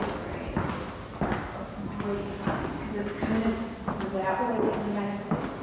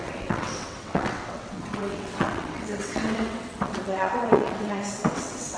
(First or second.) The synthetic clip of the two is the second